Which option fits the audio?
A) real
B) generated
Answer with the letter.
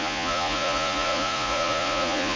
B